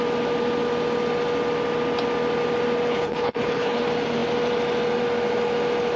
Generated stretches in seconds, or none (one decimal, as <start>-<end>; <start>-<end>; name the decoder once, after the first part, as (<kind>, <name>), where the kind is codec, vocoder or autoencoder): 2.9-3.8 (codec, HILCodec)